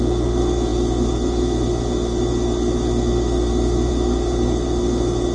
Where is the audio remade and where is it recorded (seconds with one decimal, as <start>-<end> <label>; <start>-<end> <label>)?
0.0-5.3 recorded